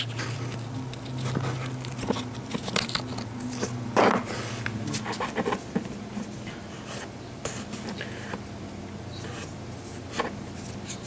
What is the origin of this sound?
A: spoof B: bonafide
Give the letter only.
B